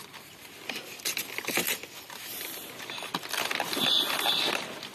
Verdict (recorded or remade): recorded